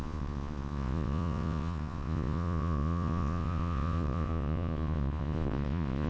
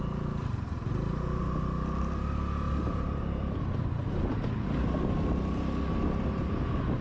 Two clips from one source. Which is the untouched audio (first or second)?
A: second